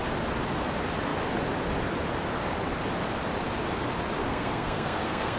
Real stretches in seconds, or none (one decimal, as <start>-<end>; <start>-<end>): 0.0-4.2